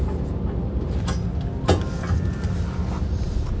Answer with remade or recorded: recorded